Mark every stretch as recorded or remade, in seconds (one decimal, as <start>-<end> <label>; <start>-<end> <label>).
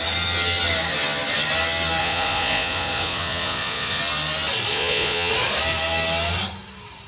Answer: 0.0-2.0 recorded; 2.0-4.0 remade; 4.0-4.7 recorded; 4.7-5.3 remade; 5.3-7.1 recorded